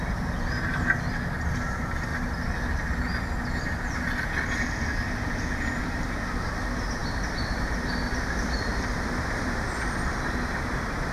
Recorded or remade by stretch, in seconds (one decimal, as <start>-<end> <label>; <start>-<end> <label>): 0.0-2.1 remade; 2.1-5.8 recorded; 5.8-11.1 remade